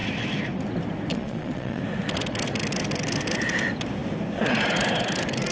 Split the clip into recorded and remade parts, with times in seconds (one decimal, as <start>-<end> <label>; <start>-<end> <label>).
0.0-1.1 recorded; 1.1-1.8 remade; 1.8-5.5 recorded